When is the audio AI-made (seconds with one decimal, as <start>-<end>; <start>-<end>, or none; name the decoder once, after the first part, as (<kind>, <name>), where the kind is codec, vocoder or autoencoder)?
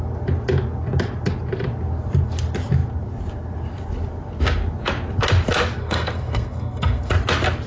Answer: 5.8-7.1 (codec, SNAC)